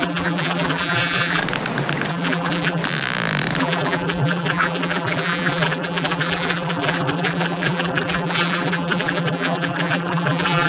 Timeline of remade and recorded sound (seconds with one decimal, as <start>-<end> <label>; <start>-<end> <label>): 0.0-1.4 remade; 1.4-2.1 recorded; 2.1-2.8 remade; 2.8-3.6 recorded; 3.6-10.7 remade